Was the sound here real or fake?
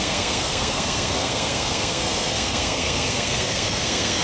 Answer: fake